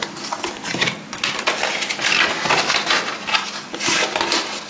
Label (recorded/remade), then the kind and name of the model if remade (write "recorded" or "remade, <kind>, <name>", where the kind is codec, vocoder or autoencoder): recorded